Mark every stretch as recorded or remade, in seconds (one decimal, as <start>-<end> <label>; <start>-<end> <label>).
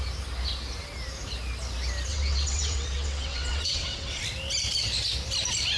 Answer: 0.0-2.1 recorded; 2.1-4.2 remade; 4.2-5.8 recorded